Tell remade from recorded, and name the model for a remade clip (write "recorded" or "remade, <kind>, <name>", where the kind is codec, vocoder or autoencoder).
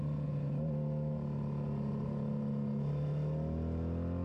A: recorded